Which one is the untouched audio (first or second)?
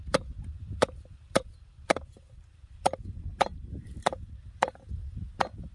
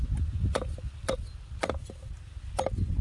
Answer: second